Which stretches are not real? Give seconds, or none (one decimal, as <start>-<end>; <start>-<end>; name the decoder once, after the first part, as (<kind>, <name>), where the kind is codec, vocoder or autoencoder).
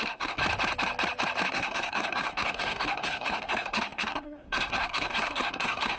0.0-0.4 (codec, SNAC); 1.5-6.0